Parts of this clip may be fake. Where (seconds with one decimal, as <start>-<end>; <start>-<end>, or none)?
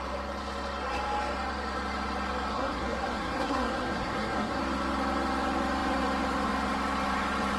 2.5-4.6